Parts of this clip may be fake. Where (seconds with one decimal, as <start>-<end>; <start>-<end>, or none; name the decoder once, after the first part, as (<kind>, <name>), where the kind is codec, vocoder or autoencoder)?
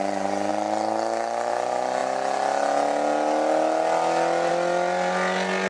none